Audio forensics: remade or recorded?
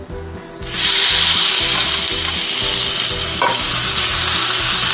remade